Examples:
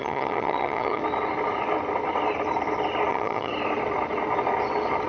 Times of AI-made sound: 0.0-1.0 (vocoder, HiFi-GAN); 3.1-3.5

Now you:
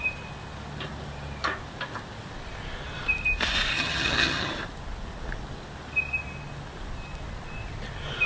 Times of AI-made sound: 3.7-4.5 (vocoder, HiFi-GAN)

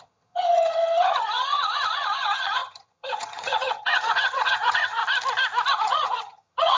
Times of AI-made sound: 0.0-5.0 (vocoder, HiFi-GAN); 5.7-6.8

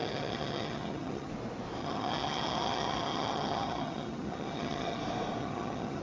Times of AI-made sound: 0.0-1.3 (vocoder, HiFi-GAN); 1.8-5.0; 5.4-6.0